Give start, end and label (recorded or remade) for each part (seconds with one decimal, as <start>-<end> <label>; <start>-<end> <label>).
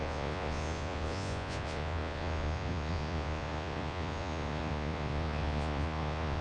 0.0-6.4 remade